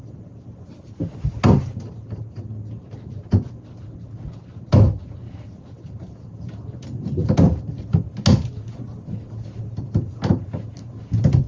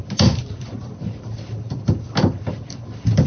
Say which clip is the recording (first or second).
first